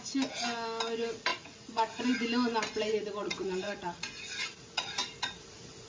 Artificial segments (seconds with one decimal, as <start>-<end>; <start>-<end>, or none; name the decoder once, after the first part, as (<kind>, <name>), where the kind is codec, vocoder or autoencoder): 1.3-2.0 (vocoder, Vocos); 3.2-5.9